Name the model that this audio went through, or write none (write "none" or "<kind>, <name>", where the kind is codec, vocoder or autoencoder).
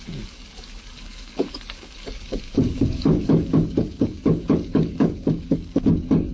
codec, DAC